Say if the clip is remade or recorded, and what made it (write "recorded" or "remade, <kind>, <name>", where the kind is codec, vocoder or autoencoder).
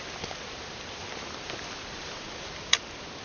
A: recorded